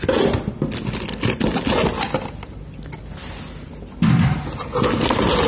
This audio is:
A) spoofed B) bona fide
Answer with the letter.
B